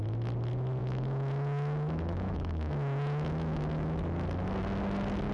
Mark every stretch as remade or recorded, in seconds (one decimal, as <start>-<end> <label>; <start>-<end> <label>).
0.0-0.8 recorded; 0.8-4.0 remade; 4.0-5.3 recorded